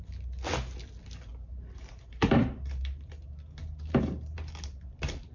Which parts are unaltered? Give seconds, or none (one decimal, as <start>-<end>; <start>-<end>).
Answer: 0.0-1.3; 4.5-5.3